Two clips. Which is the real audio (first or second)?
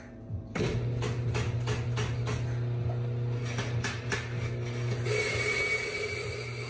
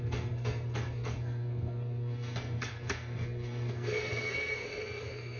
first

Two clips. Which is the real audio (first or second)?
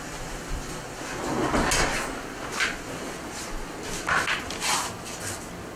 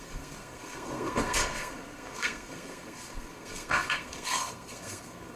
first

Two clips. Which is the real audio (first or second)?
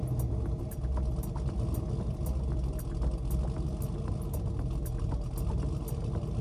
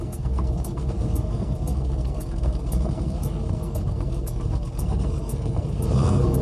first